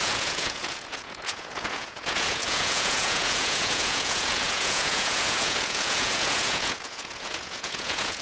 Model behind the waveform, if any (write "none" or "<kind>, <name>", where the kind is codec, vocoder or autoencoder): vocoder, Vocos